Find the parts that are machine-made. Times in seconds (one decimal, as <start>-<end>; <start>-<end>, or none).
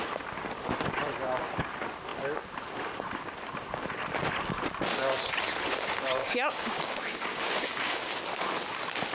6.2-8.1